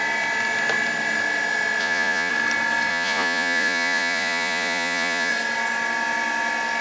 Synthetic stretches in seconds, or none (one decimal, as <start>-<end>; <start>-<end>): 1.8-2.3; 2.9-5.3